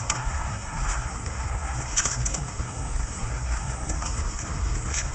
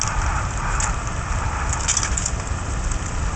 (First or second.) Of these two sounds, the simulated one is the first